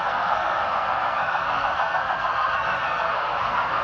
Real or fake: fake